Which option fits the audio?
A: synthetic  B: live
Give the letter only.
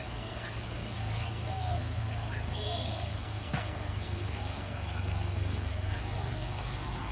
A